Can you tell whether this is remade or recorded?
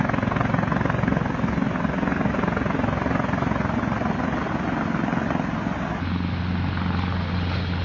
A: recorded